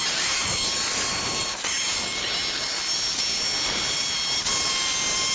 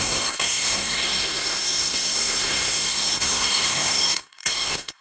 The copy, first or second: second